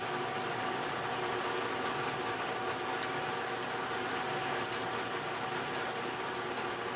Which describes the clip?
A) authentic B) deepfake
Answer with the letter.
A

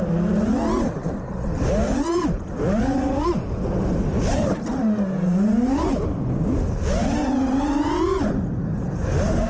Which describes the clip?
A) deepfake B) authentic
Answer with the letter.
B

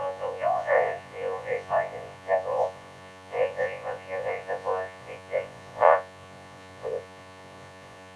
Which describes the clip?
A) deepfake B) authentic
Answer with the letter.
A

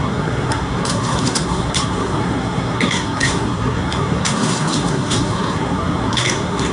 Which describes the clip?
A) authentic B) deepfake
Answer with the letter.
B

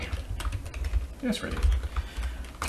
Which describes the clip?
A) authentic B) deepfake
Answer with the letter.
A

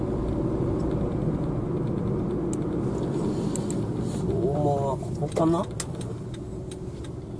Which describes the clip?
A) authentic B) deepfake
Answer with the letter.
A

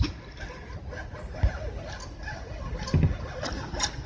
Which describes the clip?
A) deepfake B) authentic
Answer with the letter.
B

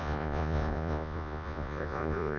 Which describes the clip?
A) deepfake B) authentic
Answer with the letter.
A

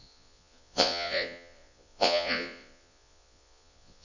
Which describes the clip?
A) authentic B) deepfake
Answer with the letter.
B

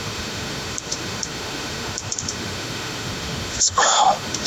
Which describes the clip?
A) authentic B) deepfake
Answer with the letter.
B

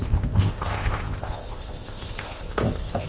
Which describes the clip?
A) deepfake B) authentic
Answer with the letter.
A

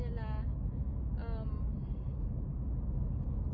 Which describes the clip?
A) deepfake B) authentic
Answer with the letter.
B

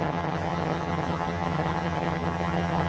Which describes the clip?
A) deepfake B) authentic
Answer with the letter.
A